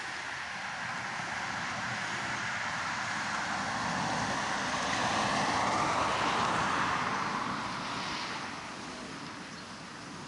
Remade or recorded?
recorded